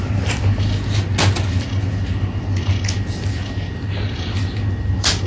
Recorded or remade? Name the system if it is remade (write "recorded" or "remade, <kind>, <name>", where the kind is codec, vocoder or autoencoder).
recorded